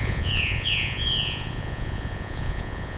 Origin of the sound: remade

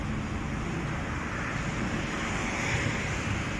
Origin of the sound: recorded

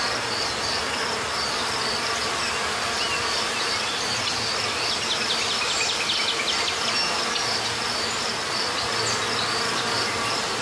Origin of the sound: recorded